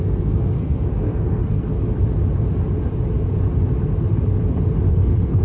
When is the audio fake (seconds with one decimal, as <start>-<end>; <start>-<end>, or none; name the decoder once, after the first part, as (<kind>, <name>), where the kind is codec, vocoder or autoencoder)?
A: 0.0-1.7 (codec, SNAC); 4.9-5.4